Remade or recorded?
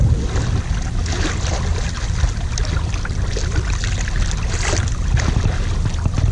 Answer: recorded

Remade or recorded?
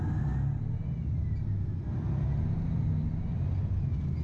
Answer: recorded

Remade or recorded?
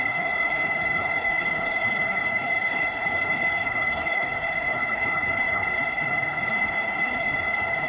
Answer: remade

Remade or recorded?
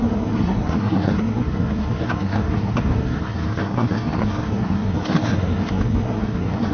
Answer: remade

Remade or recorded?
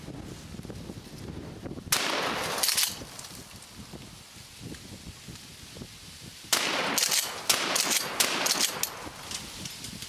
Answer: recorded